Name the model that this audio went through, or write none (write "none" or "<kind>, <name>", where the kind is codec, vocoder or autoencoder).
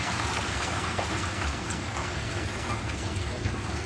codec, SNAC